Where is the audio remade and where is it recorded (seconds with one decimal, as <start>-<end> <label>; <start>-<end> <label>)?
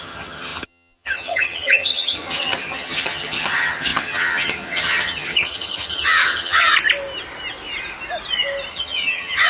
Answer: 0.0-6.7 remade; 6.7-8.7 recorded; 8.7-9.5 remade